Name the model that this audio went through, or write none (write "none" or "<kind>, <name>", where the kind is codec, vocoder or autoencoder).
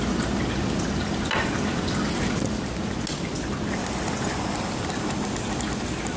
none